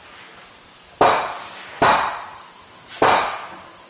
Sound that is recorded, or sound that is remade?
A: recorded